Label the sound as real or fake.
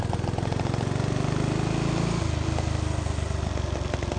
real